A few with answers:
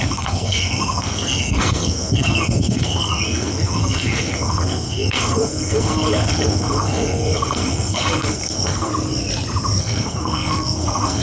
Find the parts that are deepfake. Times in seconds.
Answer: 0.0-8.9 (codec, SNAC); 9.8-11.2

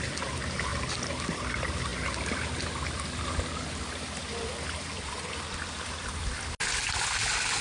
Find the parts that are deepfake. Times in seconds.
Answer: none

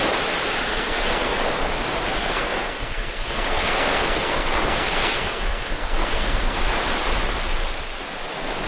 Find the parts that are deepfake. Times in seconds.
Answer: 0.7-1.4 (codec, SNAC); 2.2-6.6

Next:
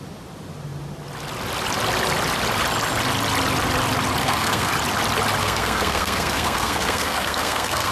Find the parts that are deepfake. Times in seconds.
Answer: 4.2-4.7 (codec, SNAC); 5.4-7.9

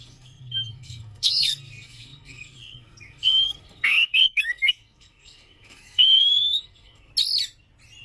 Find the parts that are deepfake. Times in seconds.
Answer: 0.0-7.1 (codec, SNAC)

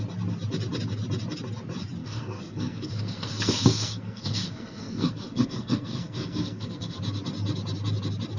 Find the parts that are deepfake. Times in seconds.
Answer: 2.0-7.0 (codec, SNAC)